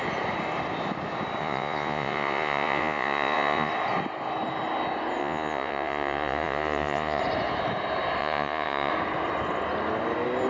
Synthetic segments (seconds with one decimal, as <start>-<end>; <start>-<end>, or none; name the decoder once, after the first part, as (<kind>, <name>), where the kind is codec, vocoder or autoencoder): 1.4-3.7 (vocoder, Vocos); 5.2-7.2; 8.2-8.9